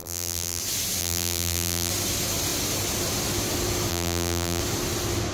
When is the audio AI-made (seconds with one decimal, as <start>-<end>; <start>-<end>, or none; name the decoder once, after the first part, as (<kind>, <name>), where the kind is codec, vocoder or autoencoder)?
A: 0.0-0.6 (vocoder, BigVGAN v2); 1.0-1.9; 3.9-4.6

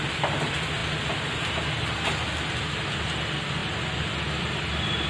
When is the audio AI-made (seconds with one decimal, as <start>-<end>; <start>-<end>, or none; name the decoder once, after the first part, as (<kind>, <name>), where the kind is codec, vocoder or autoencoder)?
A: none